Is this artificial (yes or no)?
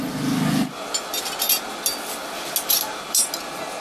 no